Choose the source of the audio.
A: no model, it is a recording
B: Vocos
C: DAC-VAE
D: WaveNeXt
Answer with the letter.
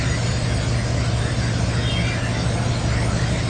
A